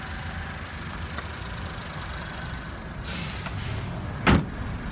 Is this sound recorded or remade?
recorded